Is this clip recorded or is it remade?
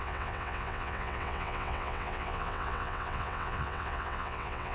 remade